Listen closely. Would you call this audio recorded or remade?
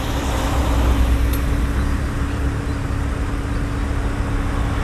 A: recorded